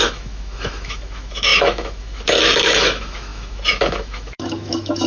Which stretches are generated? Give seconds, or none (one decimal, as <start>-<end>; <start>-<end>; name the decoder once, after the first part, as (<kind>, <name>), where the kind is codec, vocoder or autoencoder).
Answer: 0.0-5.1 (autoencoder, DAC-VAE)

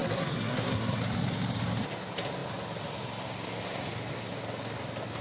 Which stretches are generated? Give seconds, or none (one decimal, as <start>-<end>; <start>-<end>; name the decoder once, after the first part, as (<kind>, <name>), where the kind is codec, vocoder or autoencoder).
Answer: 0.0-1.0 (codec, SNAC)

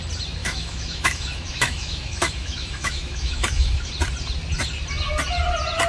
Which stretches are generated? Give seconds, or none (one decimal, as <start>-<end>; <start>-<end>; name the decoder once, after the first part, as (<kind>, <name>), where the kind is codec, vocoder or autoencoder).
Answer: 0.4-3.9 (autoencoder, DAC-VAE)

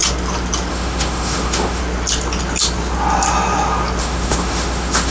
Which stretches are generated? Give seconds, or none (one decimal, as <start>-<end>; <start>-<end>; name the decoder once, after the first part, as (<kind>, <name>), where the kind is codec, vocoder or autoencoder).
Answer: 0.7-1.8 (autoencoder, DAC-VAE); 4.0-5.1

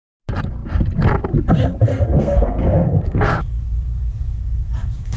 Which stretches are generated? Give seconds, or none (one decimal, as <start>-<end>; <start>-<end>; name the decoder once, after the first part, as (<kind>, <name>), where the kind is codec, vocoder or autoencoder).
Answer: 1.9-5.2 (codec, SNAC)

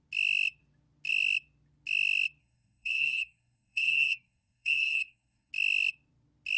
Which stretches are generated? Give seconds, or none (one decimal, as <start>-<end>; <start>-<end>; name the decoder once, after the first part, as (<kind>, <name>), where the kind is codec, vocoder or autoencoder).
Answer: 2.4-5.5 (codec, SNAC)